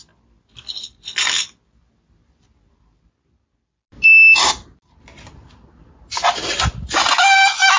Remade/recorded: recorded